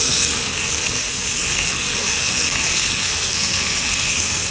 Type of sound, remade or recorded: remade